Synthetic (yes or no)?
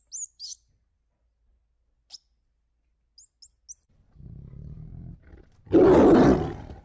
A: no